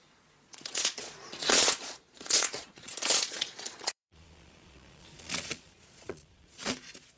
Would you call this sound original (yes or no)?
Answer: no